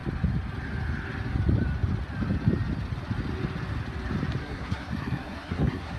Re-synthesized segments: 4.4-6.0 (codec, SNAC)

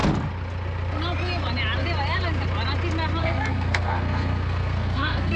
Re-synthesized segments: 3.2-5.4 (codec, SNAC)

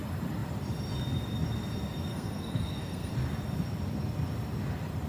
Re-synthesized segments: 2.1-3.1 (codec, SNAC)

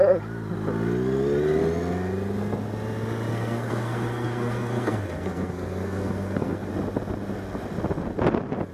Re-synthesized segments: 3.3-6.7 (codec, SNAC)